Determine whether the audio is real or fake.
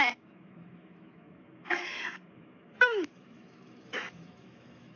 fake